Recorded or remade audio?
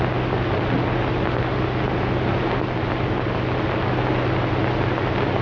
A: recorded